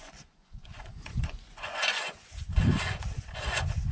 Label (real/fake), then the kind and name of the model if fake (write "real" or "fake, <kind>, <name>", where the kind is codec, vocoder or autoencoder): fake, vocoder, Vocos